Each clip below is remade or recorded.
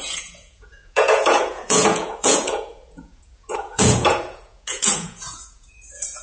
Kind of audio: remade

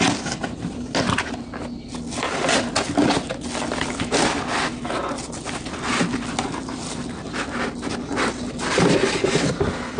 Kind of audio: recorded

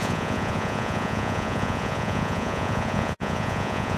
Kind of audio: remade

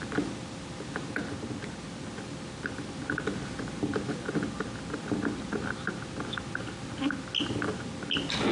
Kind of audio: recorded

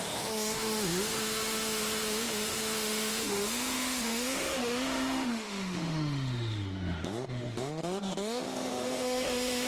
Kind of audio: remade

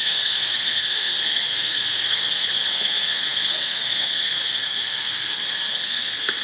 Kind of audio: remade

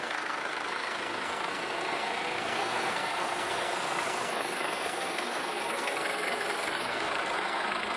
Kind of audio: remade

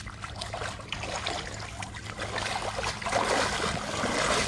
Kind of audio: recorded